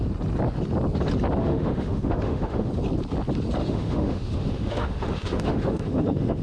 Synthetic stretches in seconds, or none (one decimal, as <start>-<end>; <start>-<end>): 1.4-2.7; 3.6-6.4